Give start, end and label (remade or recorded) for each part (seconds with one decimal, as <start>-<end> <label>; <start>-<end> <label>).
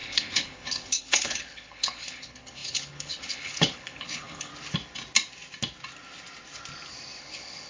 0.0-4.5 remade; 4.5-7.2 recorded; 7.2-7.7 remade